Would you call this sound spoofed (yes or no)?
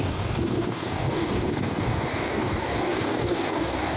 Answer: yes